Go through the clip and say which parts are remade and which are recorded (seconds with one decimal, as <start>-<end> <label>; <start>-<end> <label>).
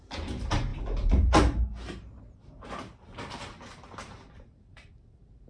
0.0-5.5 remade